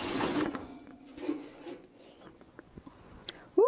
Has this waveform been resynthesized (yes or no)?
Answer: yes